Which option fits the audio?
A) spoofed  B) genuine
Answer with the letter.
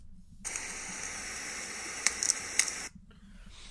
B